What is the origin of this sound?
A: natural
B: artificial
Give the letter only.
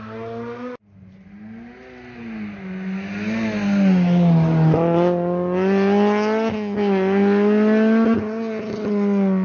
A